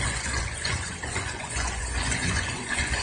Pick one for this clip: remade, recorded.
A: remade